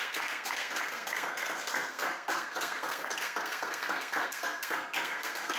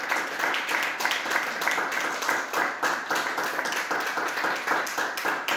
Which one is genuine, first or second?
second